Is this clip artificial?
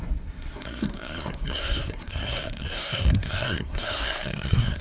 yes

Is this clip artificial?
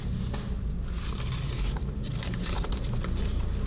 no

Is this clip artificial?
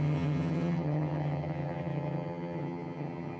yes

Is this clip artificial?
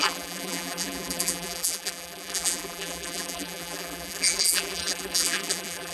yes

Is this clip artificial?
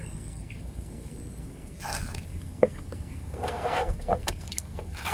yes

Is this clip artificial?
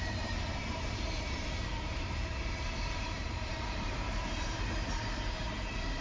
yes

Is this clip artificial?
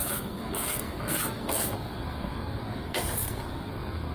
yes